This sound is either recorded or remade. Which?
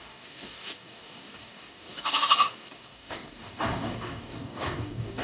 remade